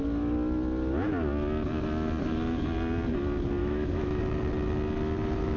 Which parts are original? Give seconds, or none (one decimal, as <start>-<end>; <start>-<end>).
0.0-3.6; 4.2-5.6